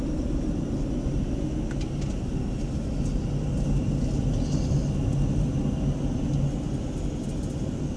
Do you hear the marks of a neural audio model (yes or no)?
no